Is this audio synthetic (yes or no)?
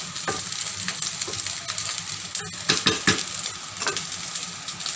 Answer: no